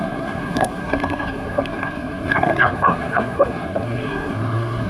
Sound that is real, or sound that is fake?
fake